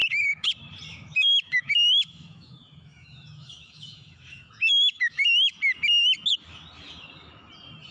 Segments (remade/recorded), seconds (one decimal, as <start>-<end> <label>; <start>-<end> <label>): 0.0-0.5 remade; 0.5-0.9 recorded; 0.9-5.6 remade; 5.6-7.9 recorded